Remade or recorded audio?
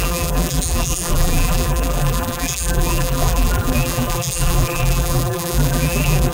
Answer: remade